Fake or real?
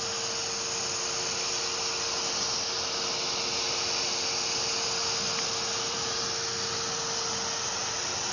real